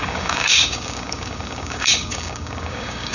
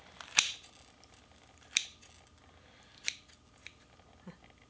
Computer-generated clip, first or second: first